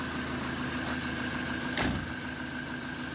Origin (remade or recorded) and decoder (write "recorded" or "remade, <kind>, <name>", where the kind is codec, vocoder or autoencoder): recorded